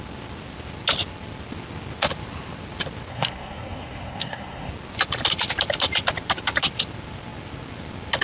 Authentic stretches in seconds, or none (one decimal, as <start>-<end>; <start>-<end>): 0.0-3.1; 4.7-8.2